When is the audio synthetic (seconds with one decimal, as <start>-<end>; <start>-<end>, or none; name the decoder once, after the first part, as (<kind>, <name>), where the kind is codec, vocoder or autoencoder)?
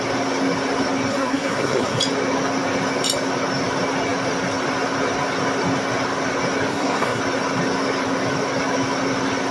1.1-2.0 (codec, SNAC); 6.7-7.2